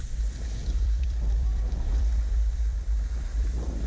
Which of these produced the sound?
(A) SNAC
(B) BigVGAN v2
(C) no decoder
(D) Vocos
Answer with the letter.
B